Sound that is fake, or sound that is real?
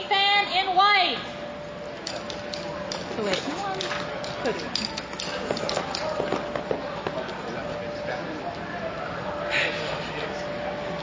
real